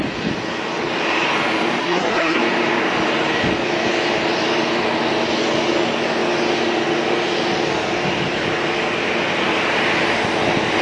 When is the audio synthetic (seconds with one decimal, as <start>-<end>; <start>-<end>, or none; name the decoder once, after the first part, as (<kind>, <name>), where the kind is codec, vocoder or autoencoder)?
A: 1.8-2.4 (codec, SNAC)